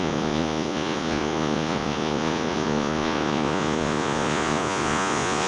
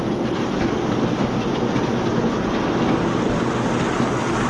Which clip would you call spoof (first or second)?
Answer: first